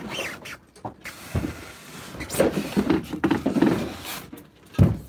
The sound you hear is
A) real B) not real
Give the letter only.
A